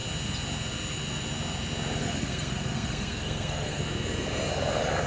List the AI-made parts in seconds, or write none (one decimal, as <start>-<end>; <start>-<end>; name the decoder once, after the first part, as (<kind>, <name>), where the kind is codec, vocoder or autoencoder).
2.0-3.8 (codec, SNAC)